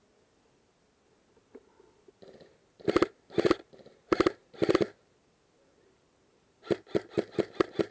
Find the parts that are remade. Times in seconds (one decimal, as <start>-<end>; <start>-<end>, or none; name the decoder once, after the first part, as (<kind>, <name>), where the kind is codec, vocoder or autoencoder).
none